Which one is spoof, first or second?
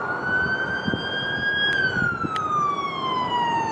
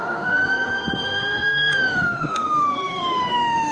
second